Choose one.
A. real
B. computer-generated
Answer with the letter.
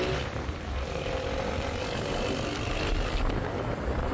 A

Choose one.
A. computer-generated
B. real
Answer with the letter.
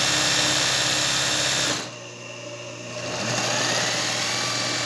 B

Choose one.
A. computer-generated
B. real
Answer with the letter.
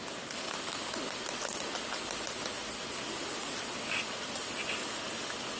B